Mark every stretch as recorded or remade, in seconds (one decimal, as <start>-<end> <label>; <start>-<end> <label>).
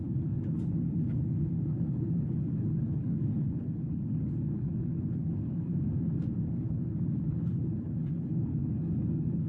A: 0.0-5.7 remade; 5.7-6.5 recorded; 6.5-9.5 remade